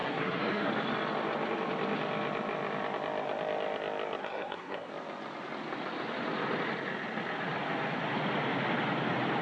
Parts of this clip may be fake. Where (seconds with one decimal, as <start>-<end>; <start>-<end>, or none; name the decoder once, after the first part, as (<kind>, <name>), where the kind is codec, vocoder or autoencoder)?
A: 0.0-0.7 (codec, SNAC); 4.2-4.9